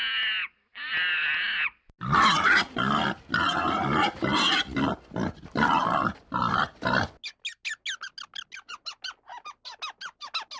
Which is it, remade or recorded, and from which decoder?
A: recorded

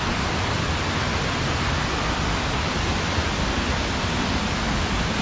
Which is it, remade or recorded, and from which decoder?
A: recorded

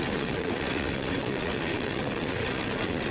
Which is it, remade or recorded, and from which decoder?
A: remade, vocoder, WaveNeXt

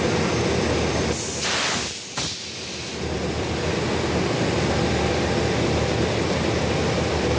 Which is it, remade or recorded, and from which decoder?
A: recorded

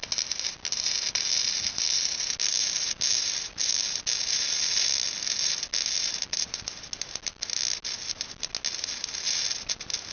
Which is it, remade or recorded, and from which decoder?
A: recorded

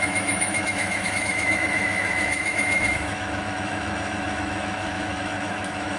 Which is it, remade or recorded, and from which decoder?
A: remade, autoencoder, DAC-VAE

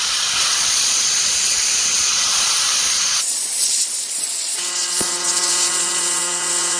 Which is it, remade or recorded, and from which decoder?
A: remade, vocoder, Vocos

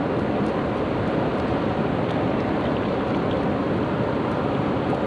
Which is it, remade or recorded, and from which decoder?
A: recorded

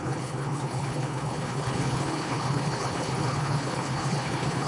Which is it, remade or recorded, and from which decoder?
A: remade, codec, HILCodec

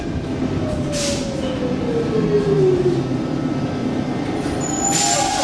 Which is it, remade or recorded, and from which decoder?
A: recorded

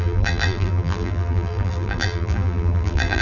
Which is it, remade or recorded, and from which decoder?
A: remade, vocoder, BigVGAN v2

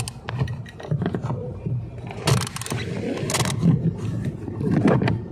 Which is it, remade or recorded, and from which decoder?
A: recorded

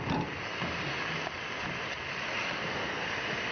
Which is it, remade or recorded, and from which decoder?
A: recorded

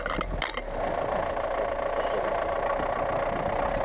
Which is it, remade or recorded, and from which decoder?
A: recorded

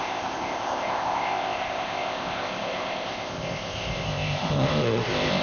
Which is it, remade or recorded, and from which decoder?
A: remade, codec, ZipCodec